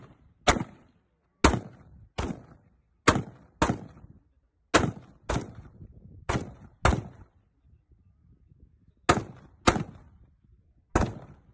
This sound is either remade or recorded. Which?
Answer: recorded